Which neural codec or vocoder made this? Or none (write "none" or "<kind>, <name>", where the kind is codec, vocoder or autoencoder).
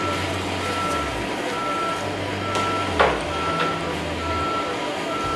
none